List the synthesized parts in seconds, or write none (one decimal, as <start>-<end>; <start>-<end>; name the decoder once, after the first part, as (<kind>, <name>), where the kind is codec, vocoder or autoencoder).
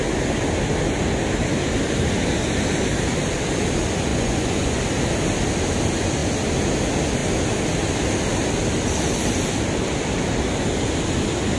4.1-4.8 (vocoder, Vocos)